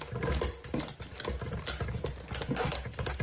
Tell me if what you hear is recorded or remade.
recorded